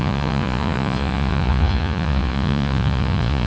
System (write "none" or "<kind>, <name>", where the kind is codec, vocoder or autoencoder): vocoder, Vocos